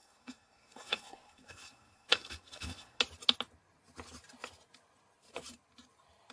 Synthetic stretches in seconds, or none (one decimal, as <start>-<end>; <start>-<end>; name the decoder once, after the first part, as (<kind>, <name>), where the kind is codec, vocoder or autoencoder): 0.0-3.0 (codec, SNAC)